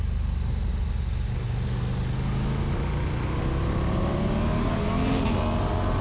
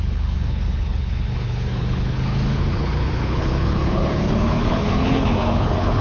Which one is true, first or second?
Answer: first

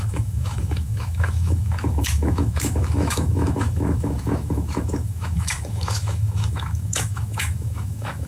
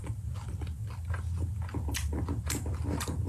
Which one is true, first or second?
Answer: second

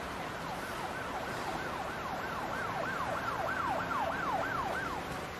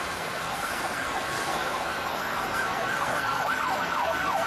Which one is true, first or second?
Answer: first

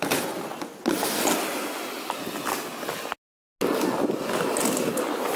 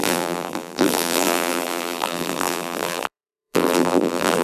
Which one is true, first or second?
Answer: first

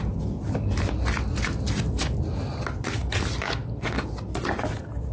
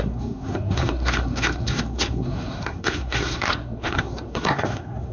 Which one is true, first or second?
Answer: first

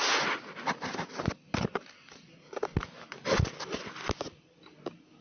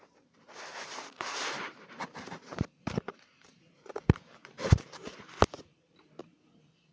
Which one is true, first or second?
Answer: first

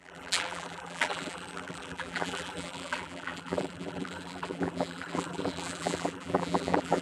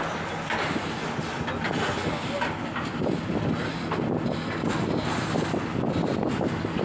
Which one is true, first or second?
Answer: second